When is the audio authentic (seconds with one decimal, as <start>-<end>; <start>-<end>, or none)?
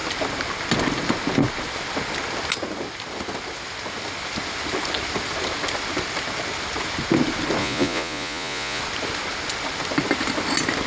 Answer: 0.0-7.6; 8.8-10.9